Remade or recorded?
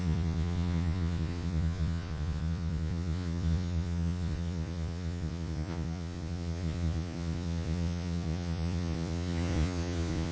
remade